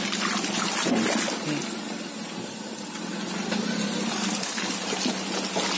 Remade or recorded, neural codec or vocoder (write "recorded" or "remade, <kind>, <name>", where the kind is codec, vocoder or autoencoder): recorded